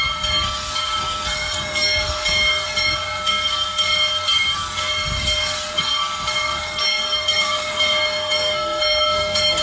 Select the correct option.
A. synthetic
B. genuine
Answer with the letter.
A